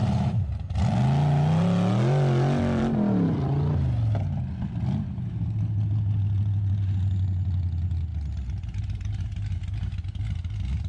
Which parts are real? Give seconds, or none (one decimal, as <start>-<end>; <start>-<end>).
0.7-10.9